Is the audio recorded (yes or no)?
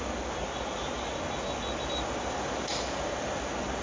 yes